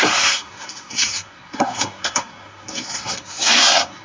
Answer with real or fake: fake